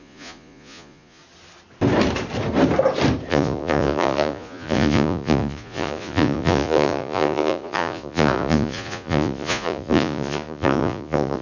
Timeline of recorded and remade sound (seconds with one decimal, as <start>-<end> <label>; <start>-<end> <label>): 0.0-1.2 remade; 1.2-3.3 recorded; 3.3-11.4 remade